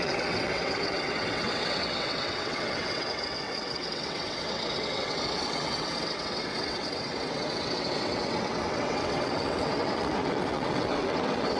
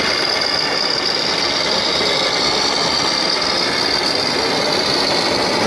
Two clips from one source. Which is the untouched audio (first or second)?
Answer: second